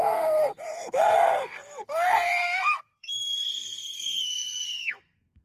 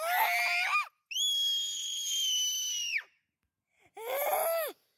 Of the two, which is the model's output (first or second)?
first